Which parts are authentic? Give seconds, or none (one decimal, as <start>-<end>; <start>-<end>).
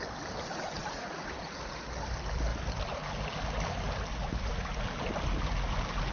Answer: 0.0-0.8; 1.9-4.1; 4.8-6.1